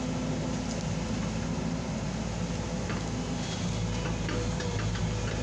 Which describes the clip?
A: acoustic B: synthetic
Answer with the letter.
A